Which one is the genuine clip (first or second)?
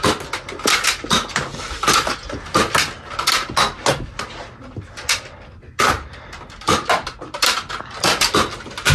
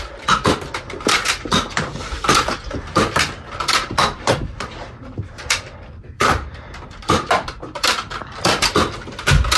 first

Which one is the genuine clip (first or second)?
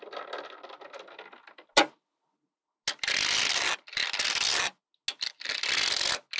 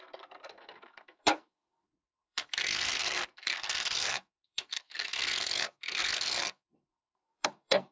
first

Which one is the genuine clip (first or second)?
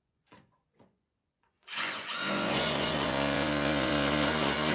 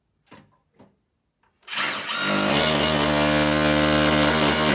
second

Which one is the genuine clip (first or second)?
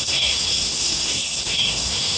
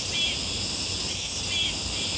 second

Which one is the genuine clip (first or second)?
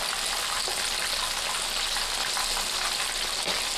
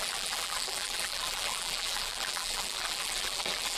first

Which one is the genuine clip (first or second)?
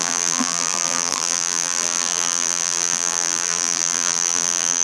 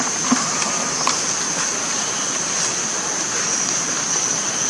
second